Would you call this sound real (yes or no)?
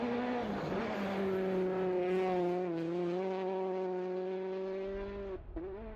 yes